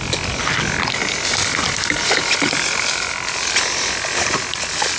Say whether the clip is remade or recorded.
recorded